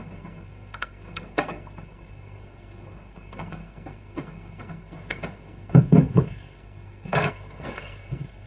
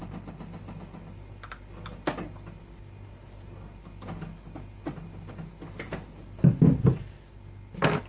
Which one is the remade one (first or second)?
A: first